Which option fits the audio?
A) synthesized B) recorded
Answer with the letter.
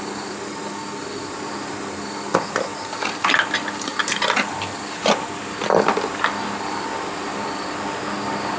B